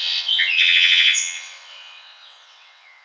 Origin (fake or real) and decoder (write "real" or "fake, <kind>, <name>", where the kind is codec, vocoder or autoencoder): fake, vocoder, WaveNeXt